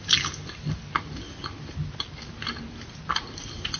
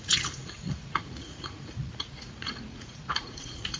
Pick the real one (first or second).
first